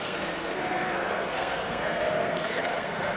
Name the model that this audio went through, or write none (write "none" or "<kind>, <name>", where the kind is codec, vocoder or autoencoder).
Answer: codec, SNAC